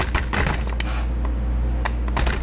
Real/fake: real